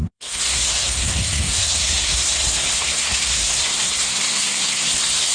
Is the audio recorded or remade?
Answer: remade